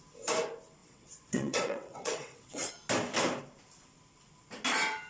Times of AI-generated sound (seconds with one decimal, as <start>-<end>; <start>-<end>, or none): 0.8-2.7